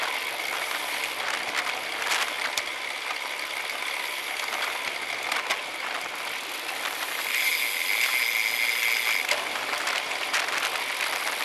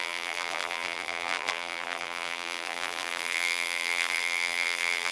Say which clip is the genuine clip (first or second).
first